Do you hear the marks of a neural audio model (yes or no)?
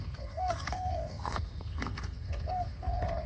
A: yes